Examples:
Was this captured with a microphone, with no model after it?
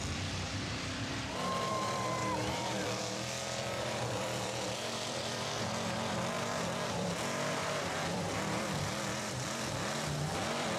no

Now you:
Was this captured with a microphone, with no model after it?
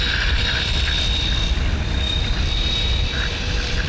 no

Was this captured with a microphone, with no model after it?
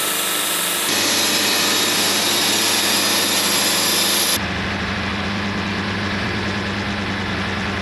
yes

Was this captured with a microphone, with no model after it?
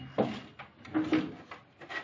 yes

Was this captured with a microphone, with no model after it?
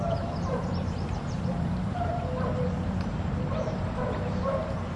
no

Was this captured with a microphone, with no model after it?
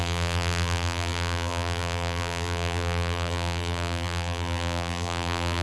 no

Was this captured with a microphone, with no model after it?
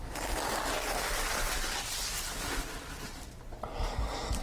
yes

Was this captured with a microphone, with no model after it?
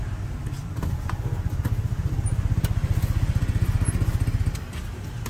yes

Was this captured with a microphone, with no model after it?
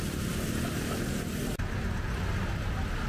yes